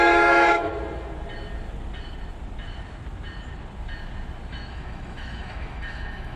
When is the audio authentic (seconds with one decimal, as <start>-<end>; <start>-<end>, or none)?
0.7-4.5